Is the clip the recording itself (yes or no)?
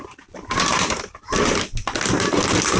yes